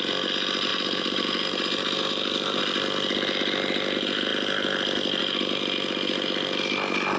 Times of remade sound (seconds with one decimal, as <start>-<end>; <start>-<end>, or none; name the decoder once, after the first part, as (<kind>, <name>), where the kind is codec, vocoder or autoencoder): 0.7-2.6 (vocoder, BigVGAN v2)